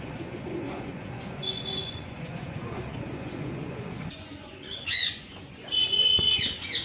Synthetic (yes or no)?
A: yes